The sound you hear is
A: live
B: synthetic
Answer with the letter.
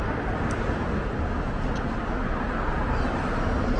A